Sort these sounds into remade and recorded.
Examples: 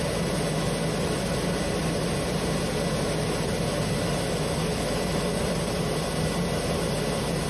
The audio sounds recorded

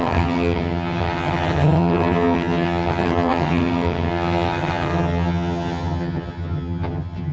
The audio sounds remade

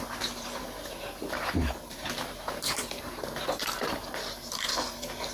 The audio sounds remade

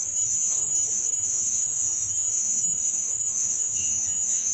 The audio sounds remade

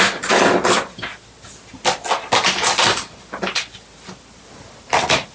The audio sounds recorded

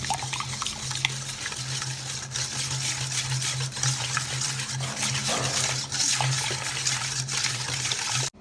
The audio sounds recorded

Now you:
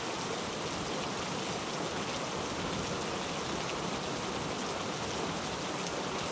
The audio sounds recorded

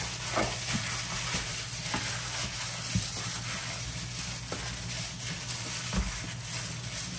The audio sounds recorded